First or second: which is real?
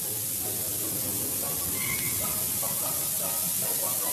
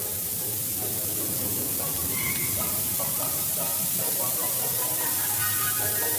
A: first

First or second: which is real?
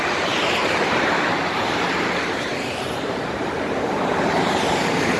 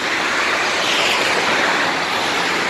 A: second